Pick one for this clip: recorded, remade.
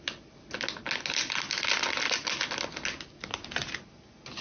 recorded